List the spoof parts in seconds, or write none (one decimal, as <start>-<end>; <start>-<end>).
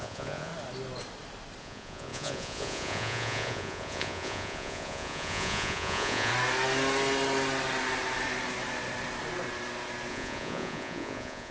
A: 0.0-0.5; 1.6-6.3; 10.1-11.5